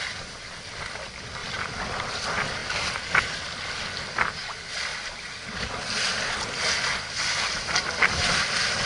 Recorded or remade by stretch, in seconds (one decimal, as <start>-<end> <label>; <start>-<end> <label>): 0.0-1.4 recorded; 1.4-2.1 remade; 2.1-2.6 recorded; 2.6-3.2 remade; 3.2-4.9 recorded; 4.9-5.7 remade; 5.7-8.9 recorded